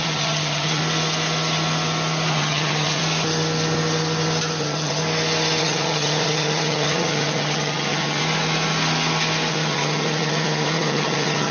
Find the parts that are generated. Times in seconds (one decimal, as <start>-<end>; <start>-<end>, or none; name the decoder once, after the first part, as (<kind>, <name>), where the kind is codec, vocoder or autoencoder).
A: 0.0-0.8 (vocoder, HiFi-GAN); 2.3-3.0; 4.6-5.0; 5.6-8.2; 9.5-11.5